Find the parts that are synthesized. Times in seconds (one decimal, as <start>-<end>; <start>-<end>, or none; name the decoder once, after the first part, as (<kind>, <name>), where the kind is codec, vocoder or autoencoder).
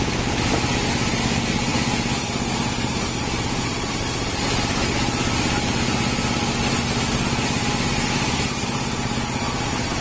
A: 1.7-4.4 (vocoder, BigVGAN v2)